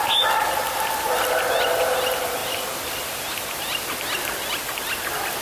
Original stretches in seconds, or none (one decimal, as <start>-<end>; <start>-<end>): 0.0-5.4